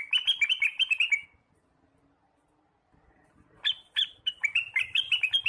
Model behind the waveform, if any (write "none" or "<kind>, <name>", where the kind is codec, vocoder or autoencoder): none